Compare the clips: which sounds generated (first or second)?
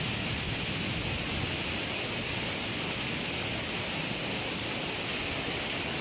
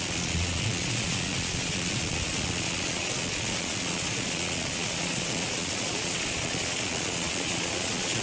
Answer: second